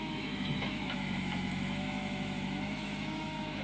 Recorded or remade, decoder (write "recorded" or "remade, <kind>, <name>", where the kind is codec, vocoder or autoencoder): remade, autoencoder, DAC-VAE